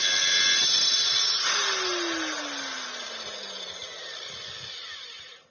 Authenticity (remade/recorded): recorded